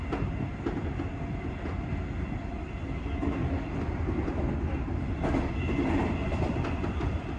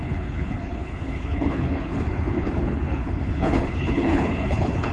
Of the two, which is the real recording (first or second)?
first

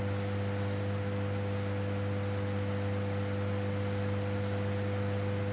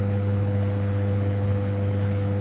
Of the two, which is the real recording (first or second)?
first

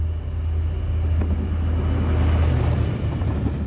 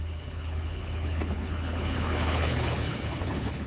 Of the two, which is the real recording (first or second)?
first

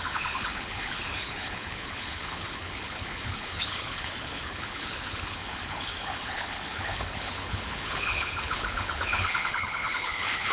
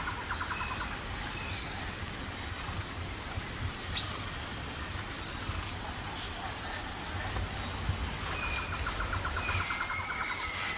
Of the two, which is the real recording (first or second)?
second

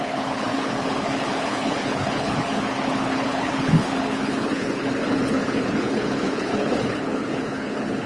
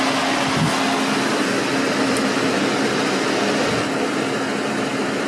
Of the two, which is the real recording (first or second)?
second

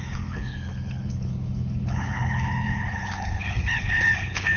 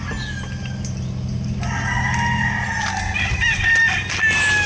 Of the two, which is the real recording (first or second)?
second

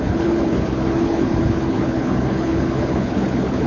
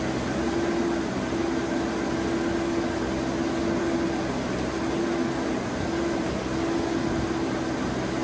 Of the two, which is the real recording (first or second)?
second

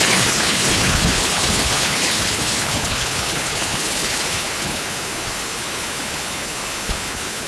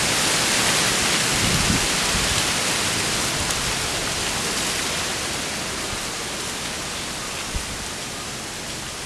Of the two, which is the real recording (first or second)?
second